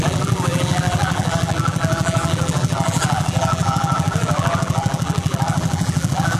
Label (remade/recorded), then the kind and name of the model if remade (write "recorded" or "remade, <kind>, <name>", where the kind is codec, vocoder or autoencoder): remade, vocoder, BigVGAN v2